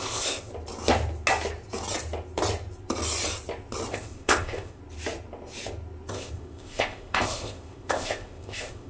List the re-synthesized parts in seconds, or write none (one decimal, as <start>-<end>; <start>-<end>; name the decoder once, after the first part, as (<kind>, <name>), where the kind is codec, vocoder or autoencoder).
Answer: 0.0-0.5 (codec, ZipCodec); 3.9-4.8; 6.1-8.9